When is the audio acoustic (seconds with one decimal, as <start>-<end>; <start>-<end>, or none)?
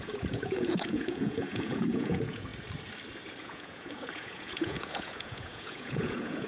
2.5-3.4